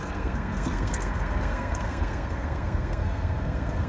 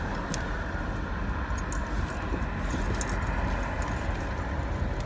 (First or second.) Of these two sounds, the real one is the second